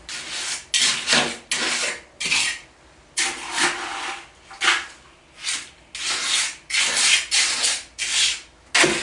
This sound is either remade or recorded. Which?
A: recorded